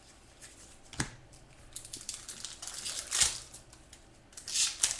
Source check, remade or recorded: recorded